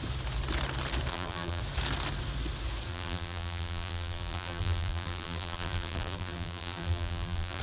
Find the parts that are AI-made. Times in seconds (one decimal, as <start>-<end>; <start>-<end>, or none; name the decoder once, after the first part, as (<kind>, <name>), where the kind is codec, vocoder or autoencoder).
1.1-1.6 (vocoder, BigVGAN v2); 2.9-7.6